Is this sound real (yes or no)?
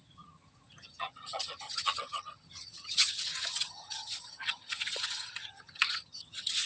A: no